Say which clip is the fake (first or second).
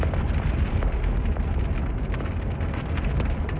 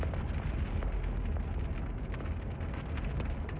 first